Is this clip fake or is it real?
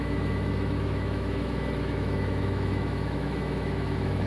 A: fake